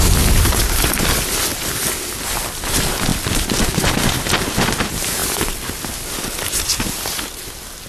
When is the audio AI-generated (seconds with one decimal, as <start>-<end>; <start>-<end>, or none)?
none